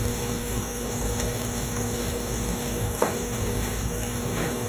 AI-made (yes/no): yes